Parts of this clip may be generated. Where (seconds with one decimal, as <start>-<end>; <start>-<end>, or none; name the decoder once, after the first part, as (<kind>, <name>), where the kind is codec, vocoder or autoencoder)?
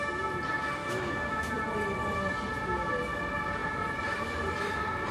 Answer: 0.8-1.5 (autoencoder, DAC-VAE)